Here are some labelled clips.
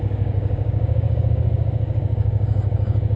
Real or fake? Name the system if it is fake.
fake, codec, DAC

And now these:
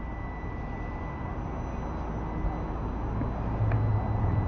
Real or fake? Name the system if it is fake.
real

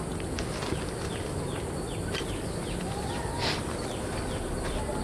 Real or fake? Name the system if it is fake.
real